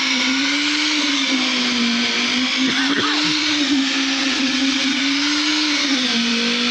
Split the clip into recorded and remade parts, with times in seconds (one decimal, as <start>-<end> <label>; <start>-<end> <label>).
0.0-4.2 recorded; 4.2-5.0 remade; 5.0-6.7 recorded